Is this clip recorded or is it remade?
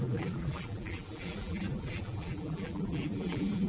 remade